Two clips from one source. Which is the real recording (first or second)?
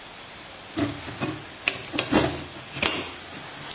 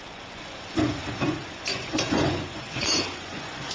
first